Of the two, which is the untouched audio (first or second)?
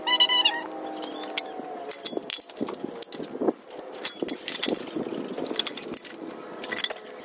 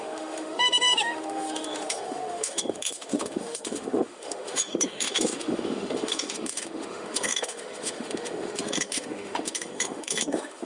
first